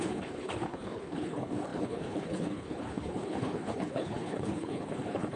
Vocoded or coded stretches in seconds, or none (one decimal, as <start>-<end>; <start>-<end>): 0.0-5.4